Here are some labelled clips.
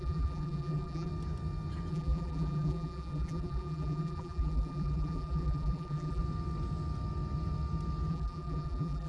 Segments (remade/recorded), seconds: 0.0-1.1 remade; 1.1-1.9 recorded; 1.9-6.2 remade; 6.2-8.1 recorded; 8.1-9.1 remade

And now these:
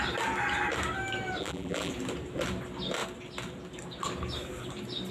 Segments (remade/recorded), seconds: 0.0-1.4 recorded; 1.4-1.9 remade; 1.9-5.1 recorded

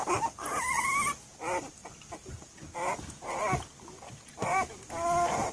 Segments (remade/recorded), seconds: 0.0-5.5 recorded

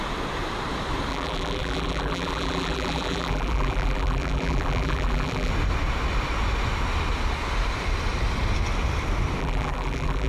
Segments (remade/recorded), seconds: 0.0-1.1 recorded; 1.1-5.5 remade; 5.5-9.4 recorded; 9.4-10.3 remade

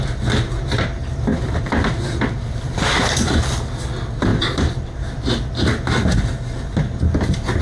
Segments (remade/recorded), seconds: 0.0-1.3 recorded; 1.3-3.4 remade; 3.4-4.3 recorded; 4.3-5.0 remade; 5.0-7.6 recorded

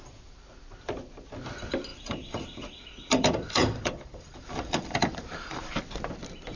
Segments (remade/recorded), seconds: 0.0-1.9 recorded; 1.9-5.8 remade; 5.8-6.6 recorded

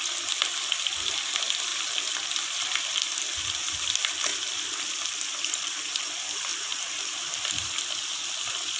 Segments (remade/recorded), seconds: 0.0-1.7 recorded; 1.7-3.5 remade; 3.5-4.3 recorded; 4.3-6.1 remade; 6.1-6.5 recorded; 6.5-7.8 remade; 7.8-8.8 recorded